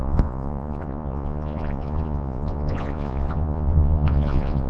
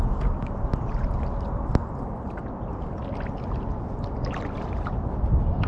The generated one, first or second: first